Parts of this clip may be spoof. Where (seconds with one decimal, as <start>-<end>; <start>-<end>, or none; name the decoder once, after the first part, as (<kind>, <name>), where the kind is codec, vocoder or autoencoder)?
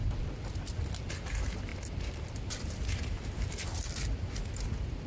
0.0-5.1 (vocoder, BigVGAN v2)